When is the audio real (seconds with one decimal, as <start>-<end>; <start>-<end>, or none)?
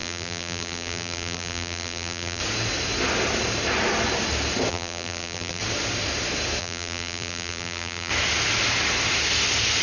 2.4-4.7; 5.6-6.6; 8.1-9.8